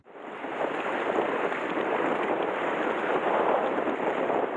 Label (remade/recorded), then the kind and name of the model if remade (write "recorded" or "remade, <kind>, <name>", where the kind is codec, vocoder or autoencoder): remade, vocoder, BigVGAN v2